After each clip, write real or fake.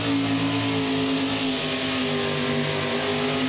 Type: real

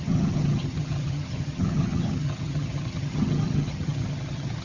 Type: fake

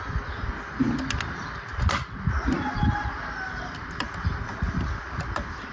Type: real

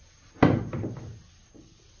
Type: real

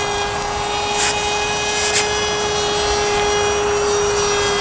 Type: real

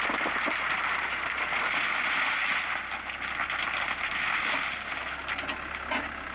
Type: real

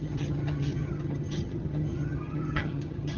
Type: fake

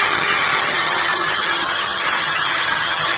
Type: fake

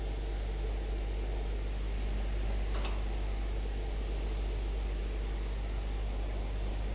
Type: real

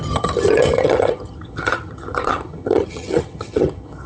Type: fake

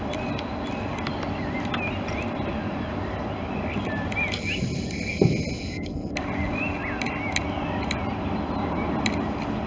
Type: real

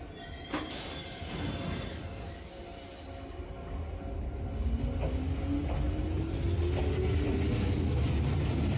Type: real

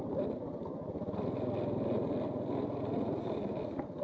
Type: real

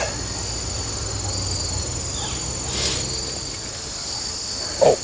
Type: real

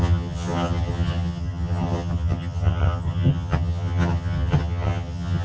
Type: fake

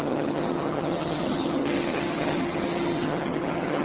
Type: fake